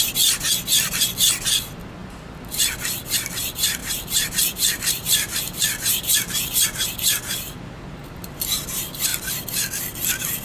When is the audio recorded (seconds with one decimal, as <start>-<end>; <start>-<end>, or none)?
0.0-3.8; 6.5-10.4

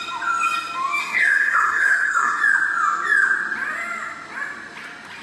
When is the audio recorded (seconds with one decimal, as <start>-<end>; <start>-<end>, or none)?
0.0-1.0; 2.4-5.2

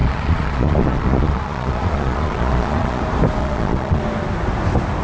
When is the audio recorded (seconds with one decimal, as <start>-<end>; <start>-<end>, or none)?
3.0-3.4; 4.0-5.0

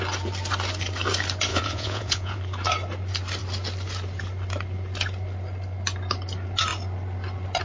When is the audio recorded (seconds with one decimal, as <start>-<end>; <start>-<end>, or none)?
0.0-1.5; 2.4-7.6

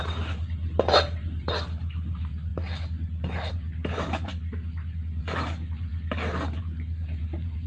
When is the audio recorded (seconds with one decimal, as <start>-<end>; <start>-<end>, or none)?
2.5-3.5; 4.3-5.2; 5.9-6.6